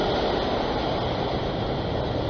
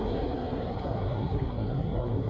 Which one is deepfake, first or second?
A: second